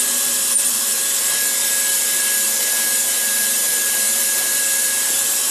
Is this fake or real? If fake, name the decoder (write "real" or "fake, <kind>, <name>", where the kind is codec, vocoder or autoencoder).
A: fake, vocoder, BigVGAN v2